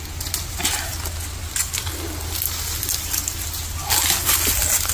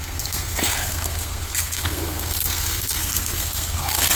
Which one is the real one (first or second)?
first